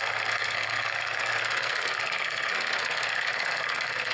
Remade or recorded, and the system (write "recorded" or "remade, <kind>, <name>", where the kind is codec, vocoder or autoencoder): remade, codec, SNAC